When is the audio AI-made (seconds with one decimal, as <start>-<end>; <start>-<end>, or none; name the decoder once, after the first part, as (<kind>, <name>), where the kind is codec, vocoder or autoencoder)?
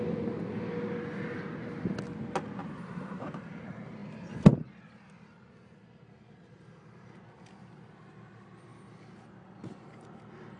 2.6-3.5 (vocoder, BigVGAN v2)